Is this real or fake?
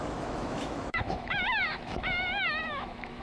fake